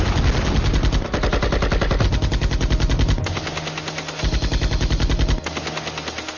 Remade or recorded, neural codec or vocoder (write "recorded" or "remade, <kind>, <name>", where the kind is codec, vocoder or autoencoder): recorded